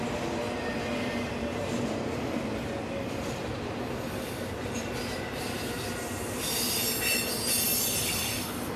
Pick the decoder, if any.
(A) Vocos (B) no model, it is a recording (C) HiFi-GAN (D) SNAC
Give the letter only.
B